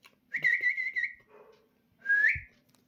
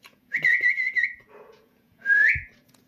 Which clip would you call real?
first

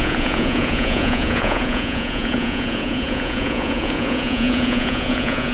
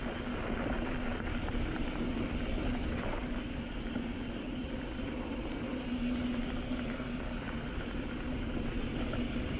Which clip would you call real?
second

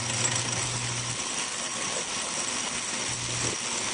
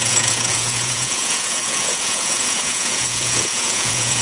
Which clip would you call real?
first